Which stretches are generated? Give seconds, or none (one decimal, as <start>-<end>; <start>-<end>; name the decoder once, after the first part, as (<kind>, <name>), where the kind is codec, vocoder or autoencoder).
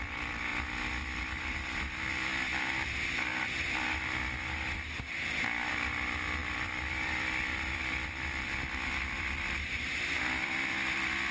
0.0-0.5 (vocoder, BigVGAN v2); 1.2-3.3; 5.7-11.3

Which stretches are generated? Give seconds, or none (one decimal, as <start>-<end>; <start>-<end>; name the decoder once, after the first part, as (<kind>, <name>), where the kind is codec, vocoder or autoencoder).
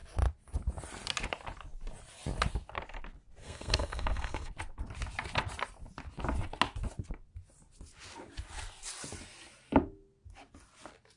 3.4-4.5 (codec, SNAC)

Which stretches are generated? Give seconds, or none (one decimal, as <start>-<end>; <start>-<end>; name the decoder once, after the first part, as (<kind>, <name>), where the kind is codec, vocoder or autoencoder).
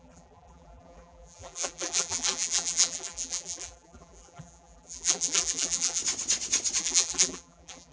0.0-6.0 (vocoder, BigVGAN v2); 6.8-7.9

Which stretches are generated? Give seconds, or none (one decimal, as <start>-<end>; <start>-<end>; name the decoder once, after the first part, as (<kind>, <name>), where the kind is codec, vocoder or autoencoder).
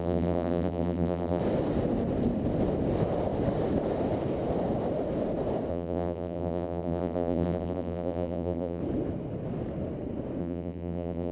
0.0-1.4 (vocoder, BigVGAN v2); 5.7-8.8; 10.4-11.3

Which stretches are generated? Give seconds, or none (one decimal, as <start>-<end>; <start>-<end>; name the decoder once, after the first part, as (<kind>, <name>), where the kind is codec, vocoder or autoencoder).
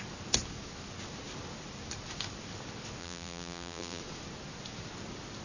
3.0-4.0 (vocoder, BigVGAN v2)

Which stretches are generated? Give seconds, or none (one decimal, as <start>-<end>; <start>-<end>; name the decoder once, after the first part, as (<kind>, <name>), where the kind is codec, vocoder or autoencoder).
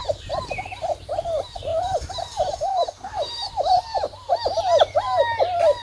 0.0-0.7 (vocoder, BigVGAN v2); 1.7-5.2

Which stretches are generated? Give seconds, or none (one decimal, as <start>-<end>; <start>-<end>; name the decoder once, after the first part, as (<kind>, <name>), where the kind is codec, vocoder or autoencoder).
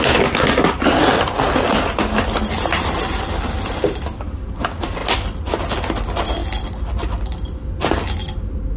none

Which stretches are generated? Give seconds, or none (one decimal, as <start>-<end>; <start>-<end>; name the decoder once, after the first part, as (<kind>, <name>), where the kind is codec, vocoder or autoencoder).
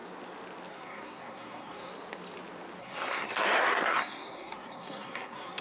0.7-1.9 (codec, SNAC); 2.8-5.6